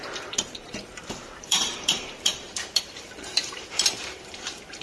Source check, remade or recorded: remade